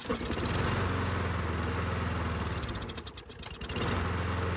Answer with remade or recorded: recorded